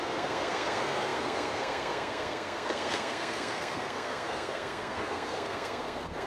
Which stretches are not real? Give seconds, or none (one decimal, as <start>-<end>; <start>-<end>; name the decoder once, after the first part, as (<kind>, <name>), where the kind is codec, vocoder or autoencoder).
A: 0.0-6.3 (codec, SNAC)